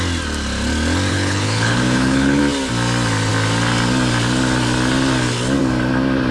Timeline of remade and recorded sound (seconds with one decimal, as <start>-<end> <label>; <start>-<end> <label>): 0.0-1.1 recorded; 1.1-2.4 remade; 2.4-6.3 recorded